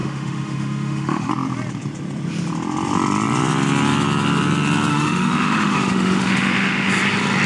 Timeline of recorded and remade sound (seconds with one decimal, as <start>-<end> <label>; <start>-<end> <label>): 0.0-1.3 remade; 1.3-4.9 recorded; 4.9-6.9 remade; 6.9-7.5 recorded